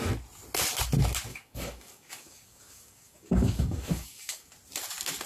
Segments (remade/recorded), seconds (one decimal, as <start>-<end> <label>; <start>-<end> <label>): 0.0-1.3 recorded; 1.3-4.5 remade; 4.5-5.3 recorded